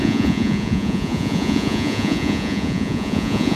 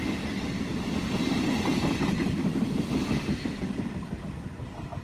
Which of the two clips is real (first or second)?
second